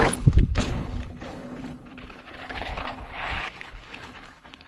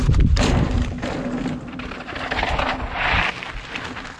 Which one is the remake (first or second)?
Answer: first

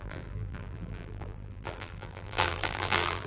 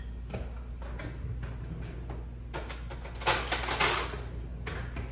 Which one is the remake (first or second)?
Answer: first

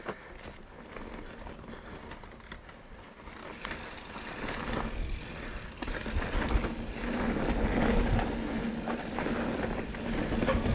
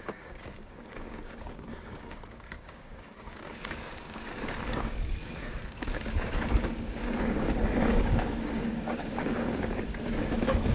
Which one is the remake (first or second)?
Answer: second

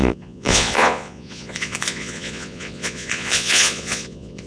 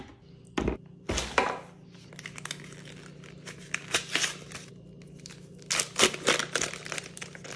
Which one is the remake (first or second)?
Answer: first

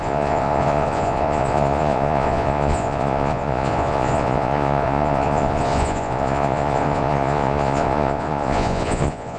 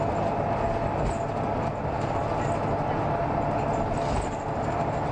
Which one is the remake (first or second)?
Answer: first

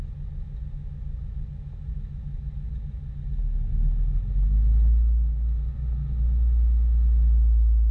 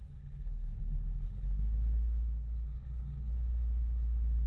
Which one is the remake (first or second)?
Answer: second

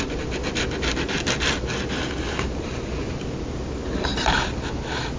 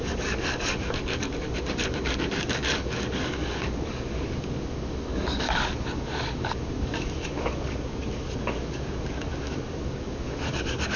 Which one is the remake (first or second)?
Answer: second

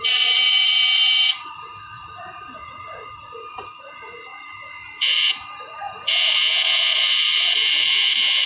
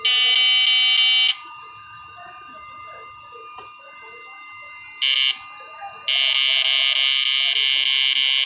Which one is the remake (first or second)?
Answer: first